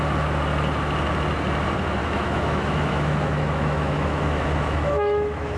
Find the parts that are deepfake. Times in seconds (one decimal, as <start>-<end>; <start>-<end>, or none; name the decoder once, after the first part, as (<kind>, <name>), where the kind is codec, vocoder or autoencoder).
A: 2.0-5.6 (autoencoder, DAC-VAE)